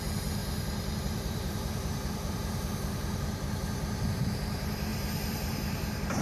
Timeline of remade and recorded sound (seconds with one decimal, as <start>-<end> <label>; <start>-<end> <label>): 0.0-6.2 remade